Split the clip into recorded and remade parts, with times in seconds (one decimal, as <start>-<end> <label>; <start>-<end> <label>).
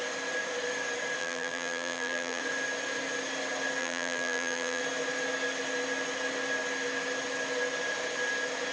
0.0-1.2 recorded; 1.2-2.4 remade; 2.4-3.8 recorded; 3.8-4.8 remade; 4.8-8.7 recorded